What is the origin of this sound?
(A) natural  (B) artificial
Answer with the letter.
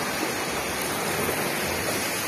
A